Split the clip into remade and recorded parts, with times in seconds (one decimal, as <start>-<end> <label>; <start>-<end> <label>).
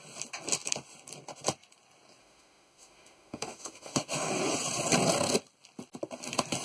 0.0-2.2 recorded; 2.2-4.3 remade; 4.3-6.6 recorded